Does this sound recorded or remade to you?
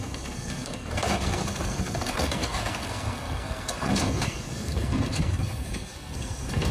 remade